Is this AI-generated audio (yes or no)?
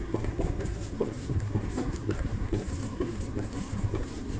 yes